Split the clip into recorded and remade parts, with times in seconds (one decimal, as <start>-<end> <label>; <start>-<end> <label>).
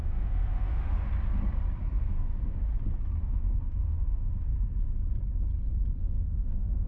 0.0-1.1 remade; 1.1-2.0 recorded; 2.0-2.7 remade; 2.7-3.2 recorded; 3.2-4.5 remade; 4.5-6.0 recorded; 6.0-6.9 remade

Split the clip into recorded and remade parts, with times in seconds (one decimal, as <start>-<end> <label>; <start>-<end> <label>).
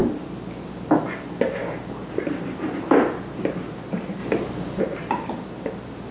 0.0-6.1 recorded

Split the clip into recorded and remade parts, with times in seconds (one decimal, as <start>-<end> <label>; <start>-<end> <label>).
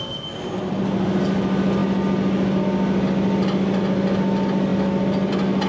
0.0-5.7 recorded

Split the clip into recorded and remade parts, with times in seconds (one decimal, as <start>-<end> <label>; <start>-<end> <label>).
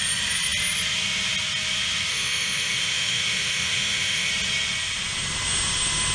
0.0-2.1 recorded; 2.1-4.3 remade; 4.3-6.1 recorded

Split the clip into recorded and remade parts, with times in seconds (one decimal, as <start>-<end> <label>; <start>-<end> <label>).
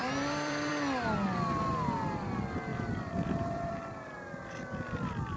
0.0-0.7 remade; 0.7-2.7 recorded; 2.7-3.7 remade; 3.7-5.4 recorded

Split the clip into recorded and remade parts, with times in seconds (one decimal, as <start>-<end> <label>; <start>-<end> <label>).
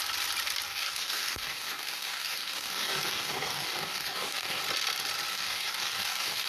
0.0-0.7 recorded; 0.7-4.6 remade; 4.6-5.3 recorded; 5.3-6.5 remade